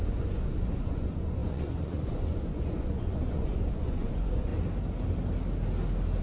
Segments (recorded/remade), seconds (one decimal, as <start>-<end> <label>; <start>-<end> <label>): 0.0-4.5 remade; 4.5-6.2 recorded